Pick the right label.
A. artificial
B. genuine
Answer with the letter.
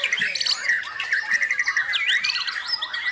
B